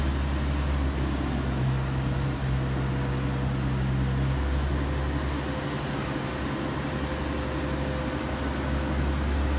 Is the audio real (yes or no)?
yes